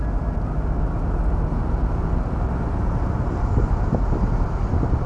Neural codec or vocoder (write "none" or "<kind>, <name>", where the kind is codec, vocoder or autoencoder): none